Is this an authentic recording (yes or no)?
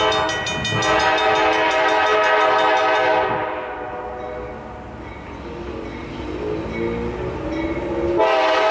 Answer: yes